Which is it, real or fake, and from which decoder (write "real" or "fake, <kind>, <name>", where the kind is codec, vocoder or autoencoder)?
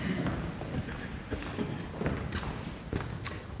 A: real